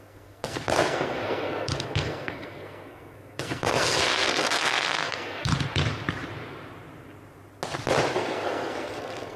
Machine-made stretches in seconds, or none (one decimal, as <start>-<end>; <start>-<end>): 0.0-5.5; 8.1-9.4